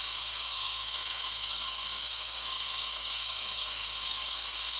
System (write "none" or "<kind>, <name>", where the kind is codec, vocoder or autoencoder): codec, SNAC